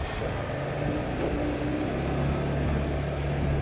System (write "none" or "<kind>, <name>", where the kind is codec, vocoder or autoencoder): none